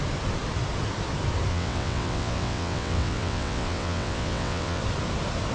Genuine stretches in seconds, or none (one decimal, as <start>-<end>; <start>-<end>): 0.0-1.5; 4.8-5.5